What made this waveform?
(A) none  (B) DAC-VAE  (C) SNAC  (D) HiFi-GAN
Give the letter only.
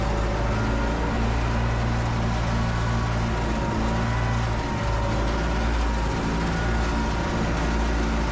A